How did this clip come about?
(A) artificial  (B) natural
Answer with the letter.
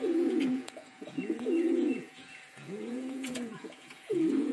A